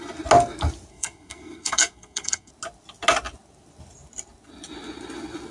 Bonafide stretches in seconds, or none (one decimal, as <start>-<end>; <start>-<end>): 0.0-0.9; 2.5-5.5